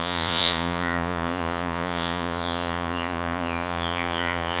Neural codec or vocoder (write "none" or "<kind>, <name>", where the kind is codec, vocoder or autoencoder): vocoder, Vocos